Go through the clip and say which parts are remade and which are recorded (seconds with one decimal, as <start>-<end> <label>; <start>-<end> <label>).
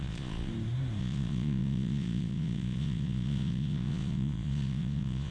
0.0-0.5 remade; 0.5-1.0 recorded; 1.0-5.3 remade